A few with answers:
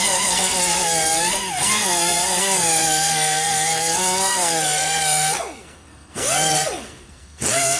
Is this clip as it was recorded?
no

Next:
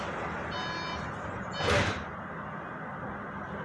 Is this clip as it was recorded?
yes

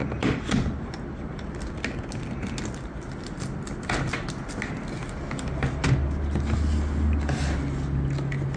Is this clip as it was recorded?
yes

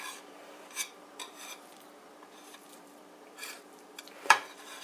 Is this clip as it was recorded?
no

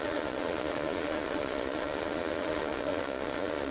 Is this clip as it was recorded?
no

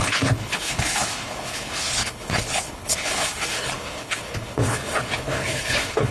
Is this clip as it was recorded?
no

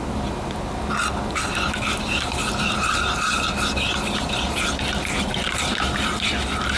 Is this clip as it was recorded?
yes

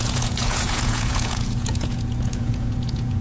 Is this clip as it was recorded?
no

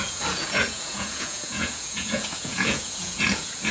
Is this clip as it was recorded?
no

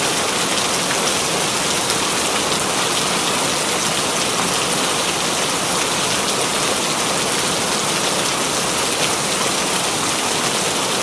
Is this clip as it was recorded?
yes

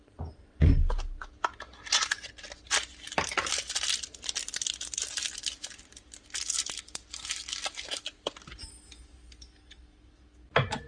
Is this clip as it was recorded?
yes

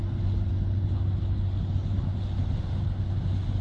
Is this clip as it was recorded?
yes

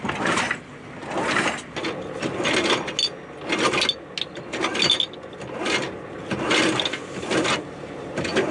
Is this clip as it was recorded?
yes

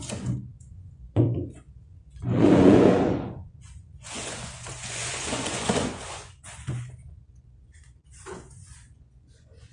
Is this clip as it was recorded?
no